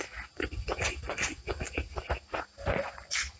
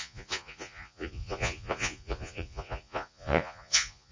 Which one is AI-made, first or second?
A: second